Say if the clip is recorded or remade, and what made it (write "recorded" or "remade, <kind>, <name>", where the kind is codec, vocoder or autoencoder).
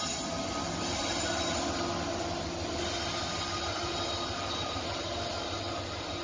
recorded